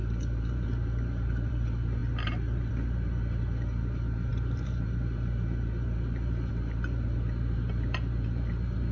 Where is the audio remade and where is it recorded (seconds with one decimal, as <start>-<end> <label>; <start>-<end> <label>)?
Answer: 0.0-8.9 remade